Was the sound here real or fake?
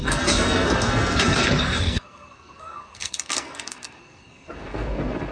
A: fake